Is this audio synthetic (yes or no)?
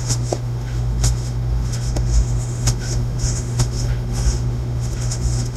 yes